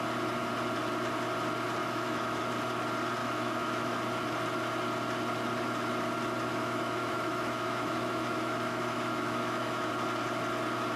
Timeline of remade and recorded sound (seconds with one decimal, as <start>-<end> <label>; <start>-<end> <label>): 0.0-1.8 recorded; 1.8-2.4 remade; 2.4-3.2 recorded; 3.2-4.0 remade; 4.0-6.5 recorded; 6.5-9.9 remade; 9.9-11.0 recorded